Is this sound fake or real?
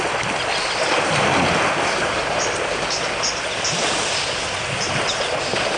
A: real